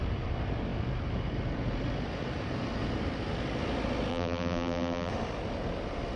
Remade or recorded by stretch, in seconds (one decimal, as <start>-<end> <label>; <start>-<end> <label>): 0.0-4.1 recorded; 4.1-5.1 remade; 5.1-6.2 recorded